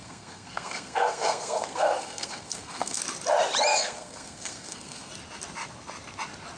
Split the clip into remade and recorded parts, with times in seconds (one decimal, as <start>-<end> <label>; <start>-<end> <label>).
0.0-3.0 remade; 3.0-3.7 recorded; 3.7-5.1 remade; 5.1-6.6 recorded

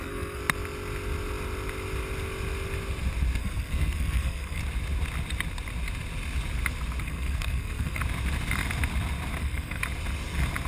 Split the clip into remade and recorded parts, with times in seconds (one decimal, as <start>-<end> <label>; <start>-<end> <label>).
0.0-0.4 remade; 0.4-3.4 recorded; 3.4-4.6 remade; 4.6-7.0 recorded; 7.0-8.0 remade; 8.0-9.4 recorded; 9.4-9.8 remade; 9.8-10.7 recorded

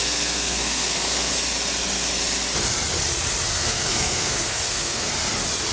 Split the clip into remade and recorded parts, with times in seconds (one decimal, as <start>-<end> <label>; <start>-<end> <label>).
0.0-1.3 remade; 1.3-3.5 recorded; 3.5-5.1 remade; 5.1-5.7 recorded